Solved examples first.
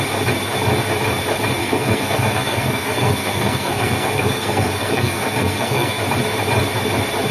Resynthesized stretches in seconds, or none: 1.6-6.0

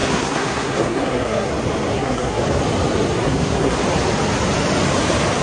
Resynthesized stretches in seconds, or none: 0.0-1.5; 1.9-2.6; 3.2-3.8

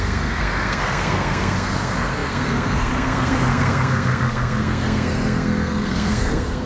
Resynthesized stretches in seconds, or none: 0.0-6.7